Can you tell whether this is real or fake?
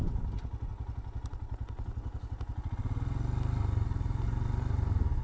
real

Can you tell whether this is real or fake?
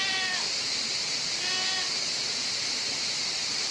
real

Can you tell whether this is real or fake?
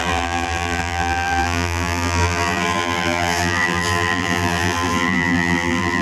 fake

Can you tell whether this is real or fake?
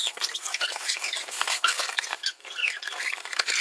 fake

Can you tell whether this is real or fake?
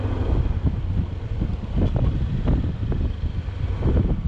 real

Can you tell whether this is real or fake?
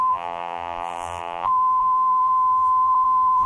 fake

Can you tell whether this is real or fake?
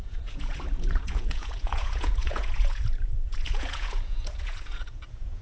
fake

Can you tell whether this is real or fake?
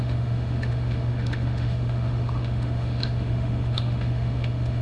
fake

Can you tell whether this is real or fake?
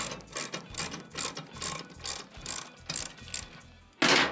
real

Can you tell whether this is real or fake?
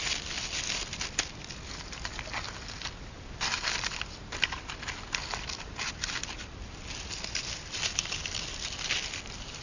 real